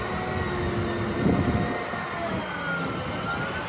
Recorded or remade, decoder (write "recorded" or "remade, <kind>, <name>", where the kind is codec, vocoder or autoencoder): recorded